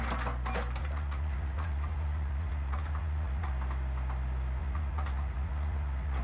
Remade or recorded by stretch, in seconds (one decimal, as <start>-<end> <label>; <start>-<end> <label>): 0.0-0.8 recorded; 0.8-3.5 remade; 3.5-4.6 recorded; 4.6-6.2 remade